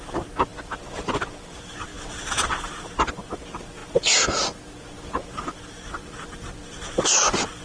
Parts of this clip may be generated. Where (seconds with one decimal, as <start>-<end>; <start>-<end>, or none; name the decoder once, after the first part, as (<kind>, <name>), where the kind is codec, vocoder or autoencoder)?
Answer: none